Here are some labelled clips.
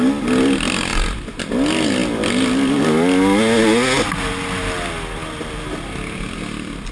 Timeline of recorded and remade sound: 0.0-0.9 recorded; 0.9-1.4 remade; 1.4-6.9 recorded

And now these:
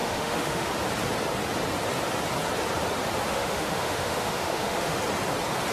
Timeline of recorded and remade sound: 0.0-0.7 remade; 0.7-3.3 recorded; 3.3-5.0 remade; 5.0-5.7 recorded

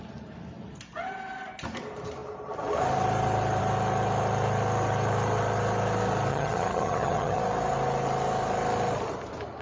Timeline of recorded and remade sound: 0.0-6.3 recorded; 6.3-7.4 remade; 7.4-9.6 recorded